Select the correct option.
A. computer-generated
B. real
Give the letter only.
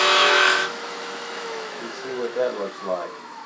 A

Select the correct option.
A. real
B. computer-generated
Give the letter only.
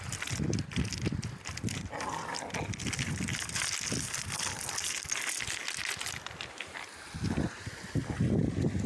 A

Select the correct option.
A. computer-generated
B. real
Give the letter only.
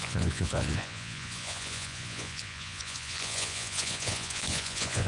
A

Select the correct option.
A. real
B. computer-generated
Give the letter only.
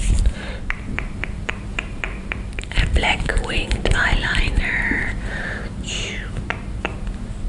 B